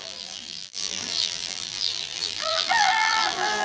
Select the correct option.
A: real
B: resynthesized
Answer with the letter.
B